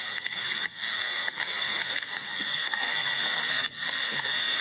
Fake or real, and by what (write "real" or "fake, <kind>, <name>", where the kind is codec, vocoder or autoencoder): fake, codec, SNAC